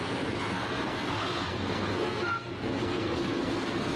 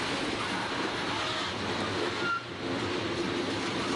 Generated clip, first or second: first